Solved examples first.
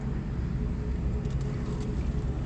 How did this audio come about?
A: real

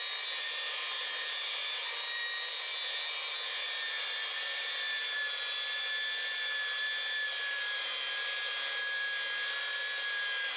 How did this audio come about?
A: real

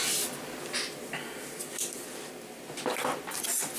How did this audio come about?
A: real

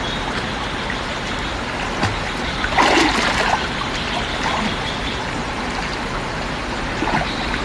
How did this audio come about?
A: real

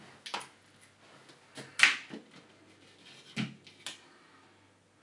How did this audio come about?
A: real